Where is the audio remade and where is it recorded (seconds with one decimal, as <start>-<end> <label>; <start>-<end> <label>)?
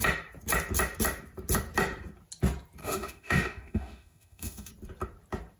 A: 0.0-2.8 recorded; 2.8-4.7 remade; 4.7-5.6 recorded